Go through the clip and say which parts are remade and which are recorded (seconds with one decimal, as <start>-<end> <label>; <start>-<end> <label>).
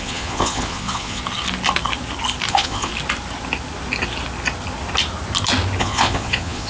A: 0.0-1.2 remade; 1.2-2.5 recorded; 2.5-2.9 remade; 2.9-5.8 recorded; 5.8-6.7 remade